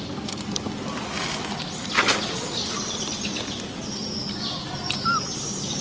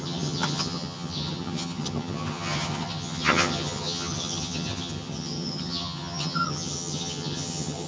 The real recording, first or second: first